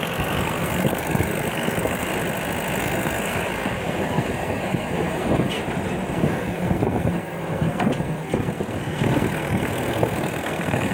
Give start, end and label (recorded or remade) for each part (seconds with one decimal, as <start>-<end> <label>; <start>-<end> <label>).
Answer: 0.0-2.1 remade; 2.1-2.8 recorded; 2.8-5.6 remade; 5.6-6.1 recorded; 6.1-10.9 remade